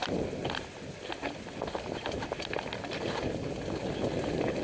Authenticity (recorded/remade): recorded